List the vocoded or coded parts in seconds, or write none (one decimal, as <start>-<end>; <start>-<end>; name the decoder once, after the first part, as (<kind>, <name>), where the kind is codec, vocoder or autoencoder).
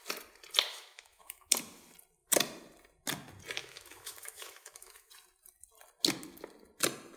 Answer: 0.7-1.5 (autoencoder, DAC-VAE); 3.6-5.1